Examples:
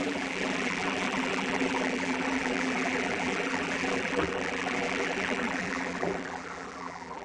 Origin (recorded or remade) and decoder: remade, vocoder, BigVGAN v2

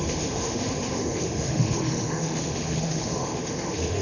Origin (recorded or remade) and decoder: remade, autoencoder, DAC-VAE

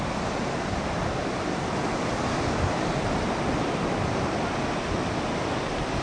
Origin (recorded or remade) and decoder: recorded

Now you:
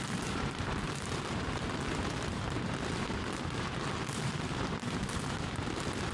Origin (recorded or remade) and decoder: recorded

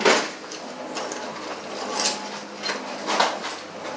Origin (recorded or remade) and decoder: recorded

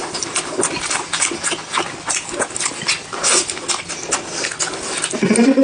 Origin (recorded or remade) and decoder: recorded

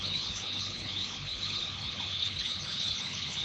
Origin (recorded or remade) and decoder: remade, codec, HILCodec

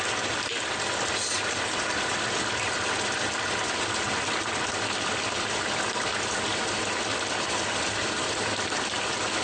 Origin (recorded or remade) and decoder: recorded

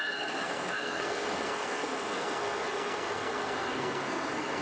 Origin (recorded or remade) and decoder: remade, codec, SNAC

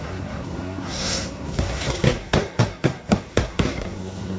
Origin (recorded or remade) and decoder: remade, codec, SNAC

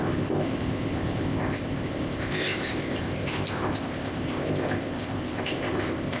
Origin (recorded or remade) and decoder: remade, codec, ZipCodec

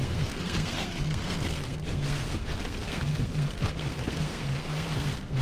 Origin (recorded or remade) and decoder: remade, codec, SNAC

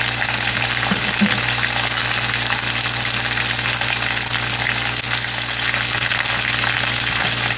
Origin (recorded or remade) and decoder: recorded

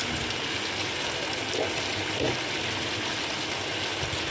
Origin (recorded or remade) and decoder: recorded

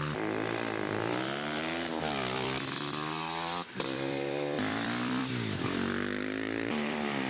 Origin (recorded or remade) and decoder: remade, vocoder, BigVGAN v2